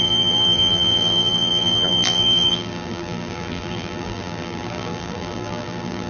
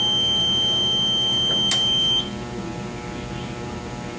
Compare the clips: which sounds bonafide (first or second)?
second